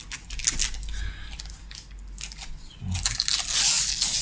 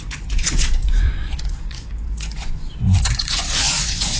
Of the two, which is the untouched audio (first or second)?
first